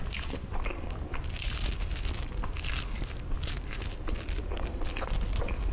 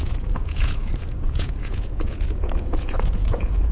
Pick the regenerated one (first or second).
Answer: second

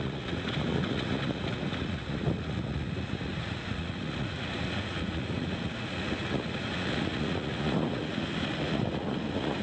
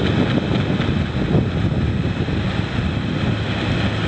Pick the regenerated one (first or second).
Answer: first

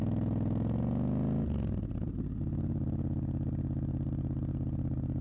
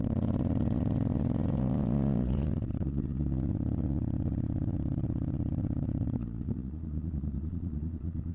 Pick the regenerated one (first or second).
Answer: second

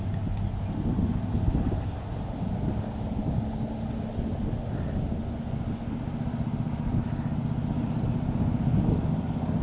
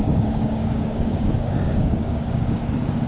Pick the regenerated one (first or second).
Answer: second